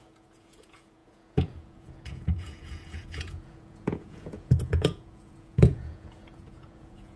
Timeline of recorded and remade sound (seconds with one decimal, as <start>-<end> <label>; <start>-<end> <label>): 0.0-7.2 remade